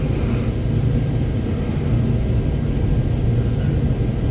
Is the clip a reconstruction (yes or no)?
no